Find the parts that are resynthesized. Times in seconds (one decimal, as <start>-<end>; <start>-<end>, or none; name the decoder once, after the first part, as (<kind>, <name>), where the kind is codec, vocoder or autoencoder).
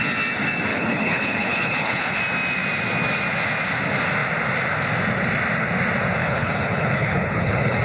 0.7-2.2 (codec, HILCodec); 6.2-7.8